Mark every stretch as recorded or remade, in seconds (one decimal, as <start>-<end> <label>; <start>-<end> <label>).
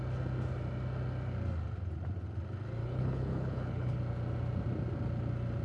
0.0-2.8 recorded; 2.8-4.0 remade; 4.0-5.6 recorded